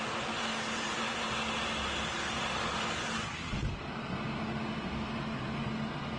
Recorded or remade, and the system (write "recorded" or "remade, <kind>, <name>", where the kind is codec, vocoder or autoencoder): recorded